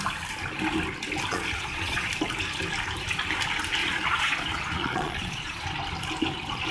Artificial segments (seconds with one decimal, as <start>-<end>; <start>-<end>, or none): 1.3-2.1; 3.8-5.6